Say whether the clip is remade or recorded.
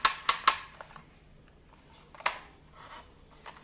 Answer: recorded